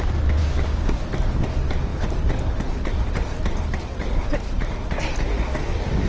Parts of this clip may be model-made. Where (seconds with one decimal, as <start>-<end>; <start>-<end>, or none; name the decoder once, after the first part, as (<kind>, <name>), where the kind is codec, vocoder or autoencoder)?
0.4-1.0 (codec, DAC)

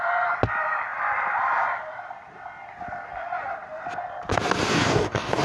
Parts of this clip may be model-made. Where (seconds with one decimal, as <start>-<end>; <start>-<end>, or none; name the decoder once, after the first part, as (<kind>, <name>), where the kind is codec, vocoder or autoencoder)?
4.7-5.4 (codec, DAC)

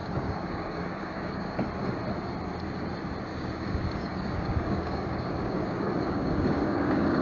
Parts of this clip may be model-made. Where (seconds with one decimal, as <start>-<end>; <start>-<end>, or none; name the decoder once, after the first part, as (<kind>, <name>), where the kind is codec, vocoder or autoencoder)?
0.0-1.6 (codec, DAC); 3.3-7.2

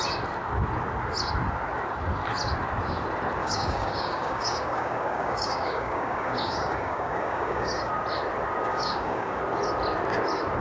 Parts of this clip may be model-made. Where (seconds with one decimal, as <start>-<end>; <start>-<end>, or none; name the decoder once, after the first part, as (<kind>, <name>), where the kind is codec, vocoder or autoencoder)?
3.4-7.9 (codec, DAC); 8.7-9.4

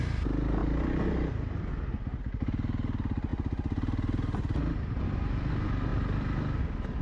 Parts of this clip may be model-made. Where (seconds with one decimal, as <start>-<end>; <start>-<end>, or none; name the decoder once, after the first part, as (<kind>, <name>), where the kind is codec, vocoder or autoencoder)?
none